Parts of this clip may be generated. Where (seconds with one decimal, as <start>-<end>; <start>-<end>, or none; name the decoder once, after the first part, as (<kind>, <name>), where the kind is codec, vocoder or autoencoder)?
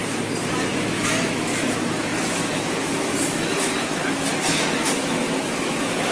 0.7-4.0 (autoencoder, DAC-VAE); 4.8-6.1